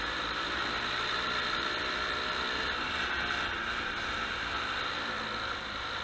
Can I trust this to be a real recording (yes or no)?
no